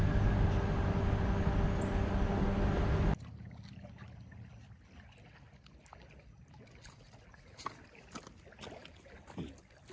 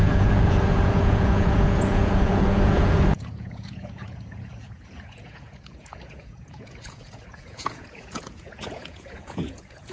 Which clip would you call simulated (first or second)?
second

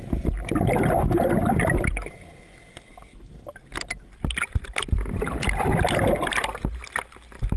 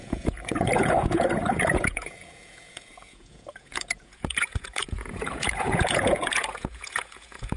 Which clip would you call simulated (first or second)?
second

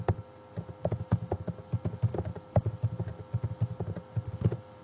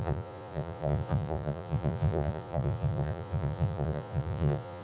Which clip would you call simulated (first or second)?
second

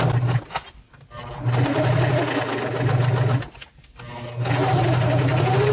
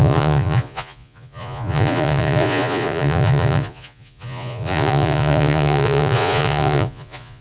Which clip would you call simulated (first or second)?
second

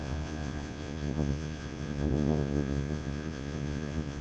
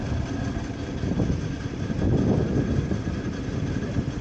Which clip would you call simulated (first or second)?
first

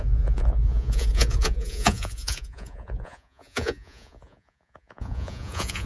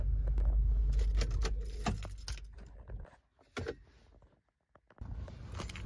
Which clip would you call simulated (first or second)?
first